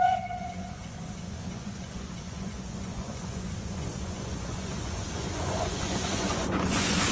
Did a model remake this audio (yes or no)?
yes